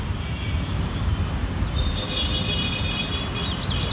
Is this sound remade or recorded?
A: recorded